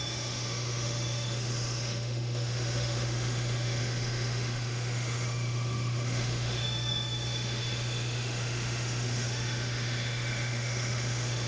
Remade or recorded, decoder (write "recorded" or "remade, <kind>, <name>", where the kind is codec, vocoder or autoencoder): remade, autoencoder, DAC-VAE